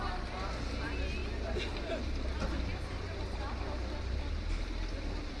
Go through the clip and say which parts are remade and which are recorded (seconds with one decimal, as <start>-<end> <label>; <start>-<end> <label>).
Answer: 0.0-5.4 recorded